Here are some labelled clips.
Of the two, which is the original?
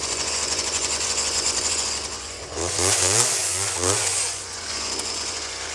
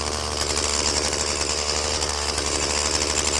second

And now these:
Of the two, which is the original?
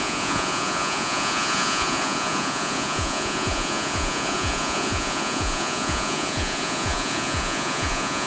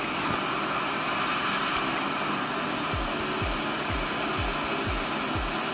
second